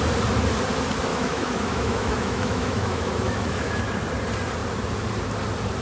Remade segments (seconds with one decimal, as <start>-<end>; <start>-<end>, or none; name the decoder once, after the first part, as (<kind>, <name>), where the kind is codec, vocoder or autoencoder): 1.1-3.8 (autoencoder, DAC-VAE)